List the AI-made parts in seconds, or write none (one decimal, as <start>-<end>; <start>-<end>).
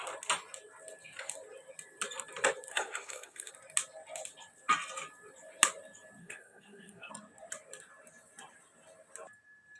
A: 2.7-3.5; 6.2-7.1